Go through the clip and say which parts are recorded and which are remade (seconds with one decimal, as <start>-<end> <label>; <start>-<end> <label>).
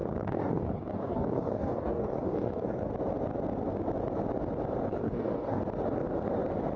0.0-2.9 remade; 2.9-4.9 recorded; 4.9-5.6 remade; 5.6-6.8 recorded